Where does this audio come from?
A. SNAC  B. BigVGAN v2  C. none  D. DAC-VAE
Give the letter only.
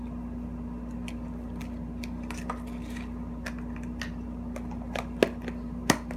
C